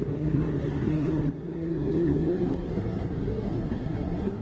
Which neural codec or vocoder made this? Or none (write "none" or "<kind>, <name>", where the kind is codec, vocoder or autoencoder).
codec, SNAC